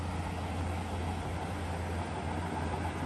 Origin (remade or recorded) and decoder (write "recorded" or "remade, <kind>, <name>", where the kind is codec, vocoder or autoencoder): recorded